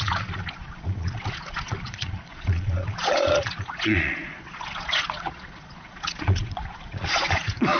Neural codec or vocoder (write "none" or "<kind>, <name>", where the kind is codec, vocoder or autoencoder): vocoder, Vocos